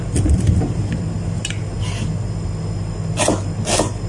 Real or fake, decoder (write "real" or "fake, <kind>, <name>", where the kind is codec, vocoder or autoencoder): real